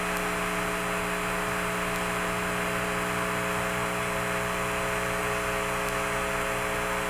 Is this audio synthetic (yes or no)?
no